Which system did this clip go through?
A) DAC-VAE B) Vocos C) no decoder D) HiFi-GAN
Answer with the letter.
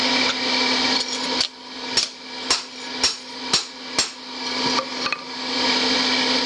C